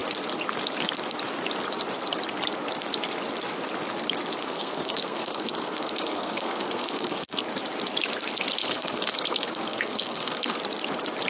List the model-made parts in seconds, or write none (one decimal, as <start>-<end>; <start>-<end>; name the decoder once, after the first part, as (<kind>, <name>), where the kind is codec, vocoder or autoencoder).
4.4-7.4 (codec, SNAC); 8.6-10.6